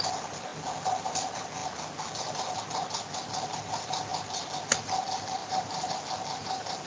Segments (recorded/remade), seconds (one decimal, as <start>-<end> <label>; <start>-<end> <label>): 0.0-5.4 recorded; 5.4-5.9 remade; 5.9-6.9 recorded